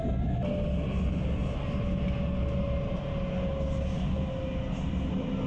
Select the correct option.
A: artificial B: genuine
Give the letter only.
B